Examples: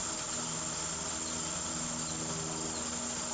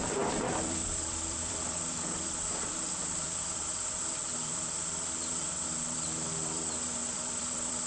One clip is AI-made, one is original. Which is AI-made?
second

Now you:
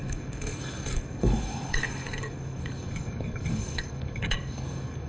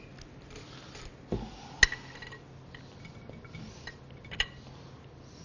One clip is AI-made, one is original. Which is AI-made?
first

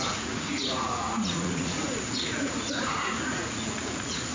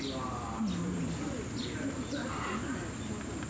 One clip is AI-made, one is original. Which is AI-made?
first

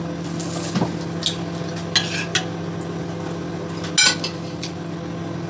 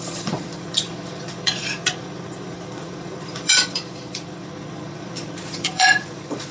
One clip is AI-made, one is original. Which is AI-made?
second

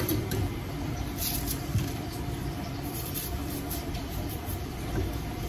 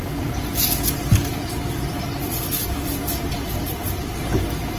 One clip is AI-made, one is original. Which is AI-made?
first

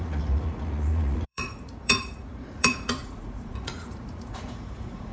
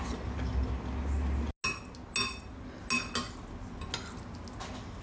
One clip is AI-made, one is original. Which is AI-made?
first